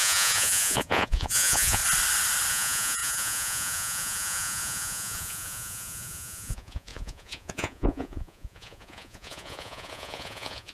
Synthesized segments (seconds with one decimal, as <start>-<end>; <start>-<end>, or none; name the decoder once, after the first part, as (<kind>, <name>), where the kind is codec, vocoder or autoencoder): 0.0-1.8 (vocoder, Vocos); 2.5-10.7